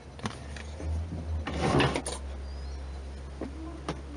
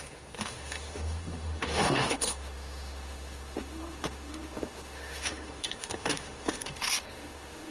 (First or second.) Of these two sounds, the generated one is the second